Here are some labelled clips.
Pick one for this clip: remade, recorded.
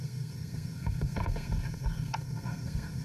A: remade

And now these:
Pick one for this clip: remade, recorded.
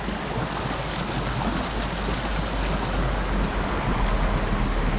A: recorded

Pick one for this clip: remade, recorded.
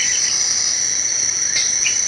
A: recorded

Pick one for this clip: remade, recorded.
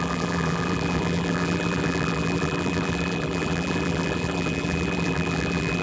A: remade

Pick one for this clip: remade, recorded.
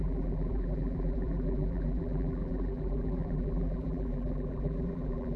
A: remade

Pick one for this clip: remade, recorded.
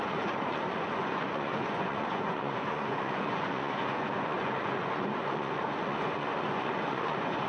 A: remade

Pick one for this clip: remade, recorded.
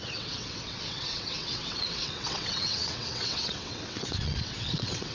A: remade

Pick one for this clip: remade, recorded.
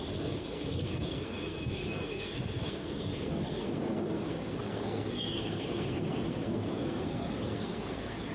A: remade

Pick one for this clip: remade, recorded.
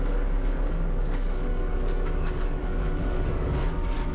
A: remade